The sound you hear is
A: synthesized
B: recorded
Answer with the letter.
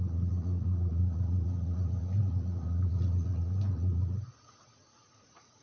A